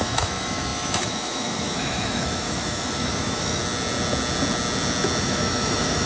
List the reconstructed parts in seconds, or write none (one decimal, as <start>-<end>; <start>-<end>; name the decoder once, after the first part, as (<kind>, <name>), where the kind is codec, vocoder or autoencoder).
0.0-3.6 (autoencoder, DAC-VAE); 5.2-6.1